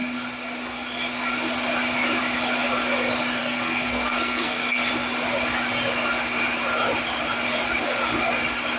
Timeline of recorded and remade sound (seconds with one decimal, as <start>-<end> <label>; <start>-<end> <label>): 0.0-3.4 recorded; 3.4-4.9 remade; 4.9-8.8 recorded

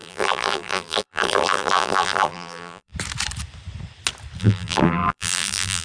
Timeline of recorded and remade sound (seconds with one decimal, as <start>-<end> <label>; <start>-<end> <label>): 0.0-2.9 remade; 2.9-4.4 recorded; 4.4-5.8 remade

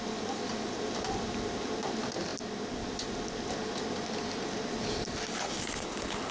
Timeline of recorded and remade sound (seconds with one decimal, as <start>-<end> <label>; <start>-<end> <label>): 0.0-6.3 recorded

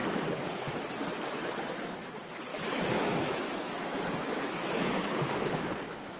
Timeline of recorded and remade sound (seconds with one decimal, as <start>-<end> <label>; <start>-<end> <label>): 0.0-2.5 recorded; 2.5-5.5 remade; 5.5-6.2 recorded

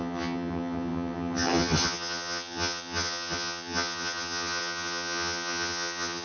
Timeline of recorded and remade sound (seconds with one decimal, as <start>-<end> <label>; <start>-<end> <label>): 0.0-6.2 remade

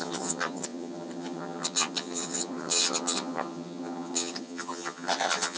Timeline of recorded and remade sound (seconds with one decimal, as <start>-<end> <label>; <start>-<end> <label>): 0.0-5.6 remade

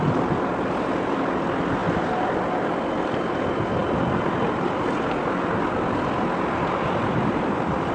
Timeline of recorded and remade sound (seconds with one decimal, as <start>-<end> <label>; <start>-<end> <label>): 0.0-7.9 recorded

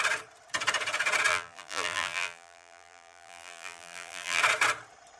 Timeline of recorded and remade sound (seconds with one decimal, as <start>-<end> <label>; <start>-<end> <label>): 0.0-1.3 recorded; 1.3-4.4 remade; 4.4-5.2 recorded